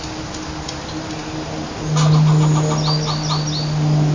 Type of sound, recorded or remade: recorded